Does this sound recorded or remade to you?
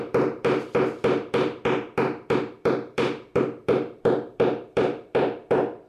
remade